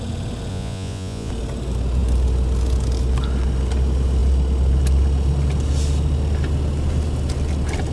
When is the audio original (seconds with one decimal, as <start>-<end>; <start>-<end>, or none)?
0.0-0.5; 1.3-7.9